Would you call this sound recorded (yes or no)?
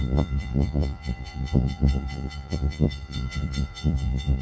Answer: no